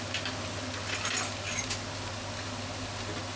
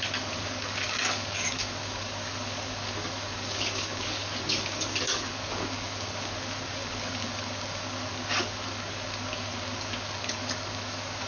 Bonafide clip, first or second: first